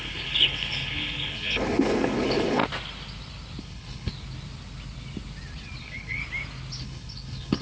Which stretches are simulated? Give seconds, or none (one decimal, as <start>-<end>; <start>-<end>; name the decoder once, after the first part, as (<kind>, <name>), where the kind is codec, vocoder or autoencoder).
0.0-2.6 (codec, HILCodec); 3.6-4.1; 5.8-6.2; 6.8-7.6